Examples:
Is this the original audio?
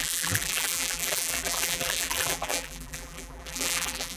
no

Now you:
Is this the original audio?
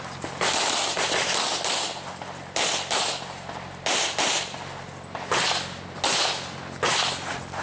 yes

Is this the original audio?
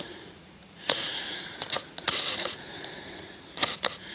no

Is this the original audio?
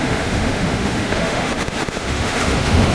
no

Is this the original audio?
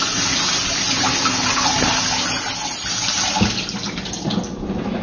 yes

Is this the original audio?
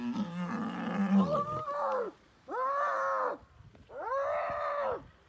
yes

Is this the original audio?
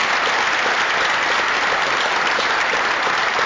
yes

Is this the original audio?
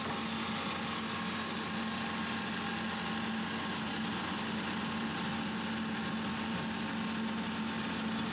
yes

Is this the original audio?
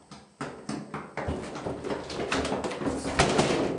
yes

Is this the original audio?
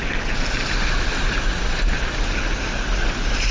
yes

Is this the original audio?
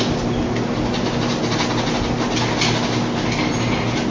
yes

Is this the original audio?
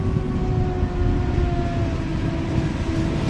yes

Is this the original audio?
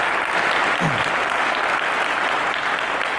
yes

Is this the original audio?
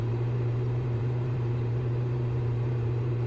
no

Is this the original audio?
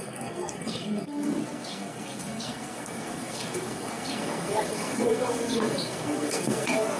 no